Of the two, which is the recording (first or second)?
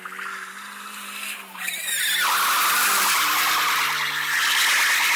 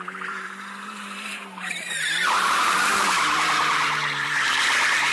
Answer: first